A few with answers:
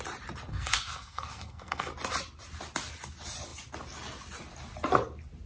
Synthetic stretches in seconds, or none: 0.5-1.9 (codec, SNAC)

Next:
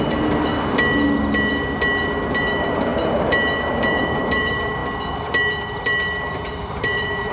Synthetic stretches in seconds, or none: 0.0-0.5 (vocoder, BigVGAN v2); 2.3-2.9; 3.6-4.8; 6.2-7.3